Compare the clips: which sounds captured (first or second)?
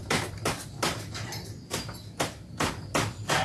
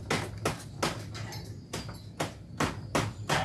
second